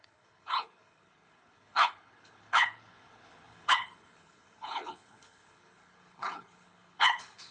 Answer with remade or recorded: remade